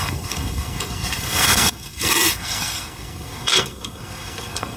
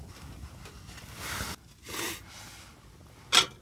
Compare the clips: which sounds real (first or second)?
second